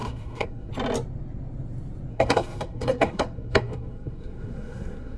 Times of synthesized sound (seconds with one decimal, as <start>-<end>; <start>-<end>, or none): 0.0-0.7; 2.1-5.2